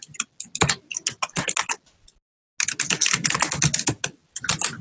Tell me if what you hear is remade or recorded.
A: recorded